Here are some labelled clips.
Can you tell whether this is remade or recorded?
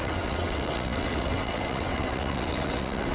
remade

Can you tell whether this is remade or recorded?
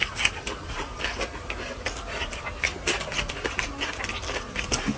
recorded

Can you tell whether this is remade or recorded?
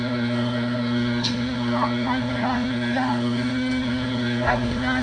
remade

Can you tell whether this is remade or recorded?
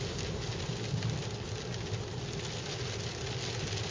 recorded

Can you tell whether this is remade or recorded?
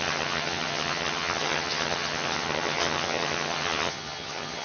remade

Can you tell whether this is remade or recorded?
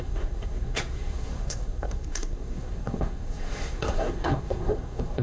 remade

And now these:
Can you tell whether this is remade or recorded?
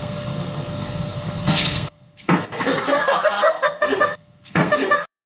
remade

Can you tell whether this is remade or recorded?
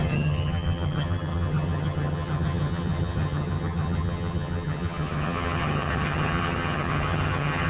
remade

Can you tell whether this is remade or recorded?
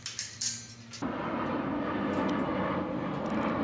recorded